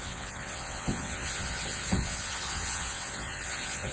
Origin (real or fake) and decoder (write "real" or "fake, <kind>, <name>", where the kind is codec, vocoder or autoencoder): fake, vocoder, WaveNeXt